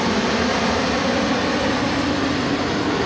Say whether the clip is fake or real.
real